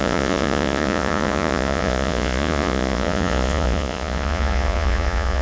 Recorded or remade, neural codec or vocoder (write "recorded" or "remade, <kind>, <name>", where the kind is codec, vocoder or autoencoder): remade, vocoder, Vocos